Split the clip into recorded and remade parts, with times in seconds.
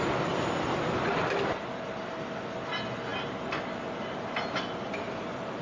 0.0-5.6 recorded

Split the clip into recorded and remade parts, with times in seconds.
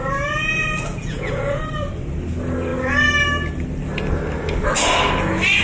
0.0-0.9 recorded; 0.9-1.6 remade; 1.6-5.6 recorded